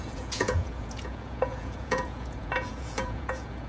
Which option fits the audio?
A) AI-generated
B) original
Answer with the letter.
A